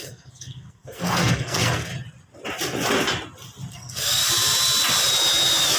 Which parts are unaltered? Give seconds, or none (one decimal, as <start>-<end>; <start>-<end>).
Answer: 1.9-3.7; 4.2-5.8